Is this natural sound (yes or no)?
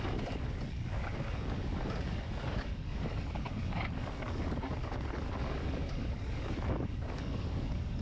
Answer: no